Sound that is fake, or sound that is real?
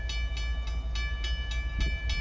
real